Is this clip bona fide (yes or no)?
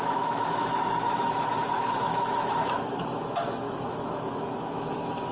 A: no